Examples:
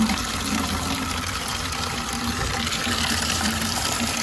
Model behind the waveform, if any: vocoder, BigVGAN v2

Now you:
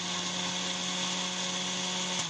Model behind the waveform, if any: none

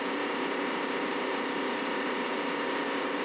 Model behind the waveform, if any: vocoder, BigVGAN v2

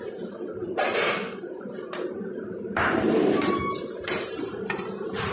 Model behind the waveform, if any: vocoder, BigVGAN v2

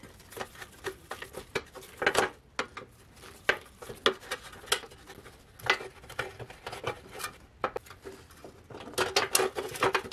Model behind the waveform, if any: none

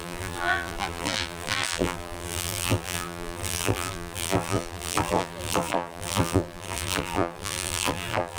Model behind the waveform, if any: vocoder, BigVGAN v2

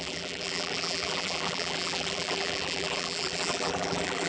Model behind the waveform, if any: vocoder, BigVGAN v2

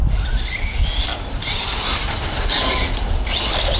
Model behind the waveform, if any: none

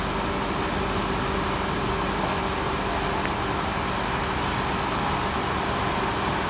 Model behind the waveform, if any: none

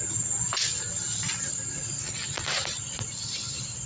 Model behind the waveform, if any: none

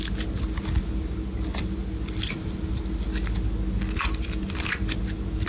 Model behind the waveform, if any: none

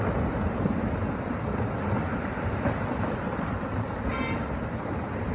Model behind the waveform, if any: vocoder, BigVGAN v2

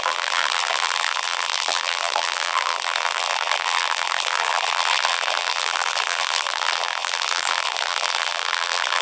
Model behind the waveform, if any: vocoder, BigVGAN v2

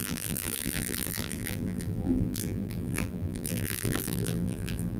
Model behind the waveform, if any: vocoder, BigVGAN v2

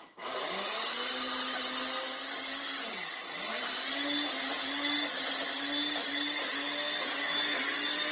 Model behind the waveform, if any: none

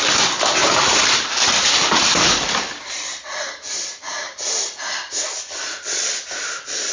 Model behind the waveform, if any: vocoder, BigVGAN v2